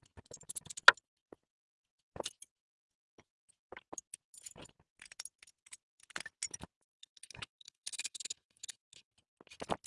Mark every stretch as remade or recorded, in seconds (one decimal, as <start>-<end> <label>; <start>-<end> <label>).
0.0-6.8 recorded; 6.8-9.1 remade; 9.1-9.9 recorded